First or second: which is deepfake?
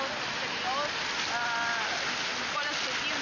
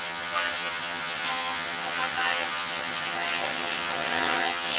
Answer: second